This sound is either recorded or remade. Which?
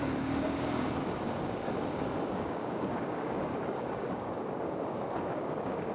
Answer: remade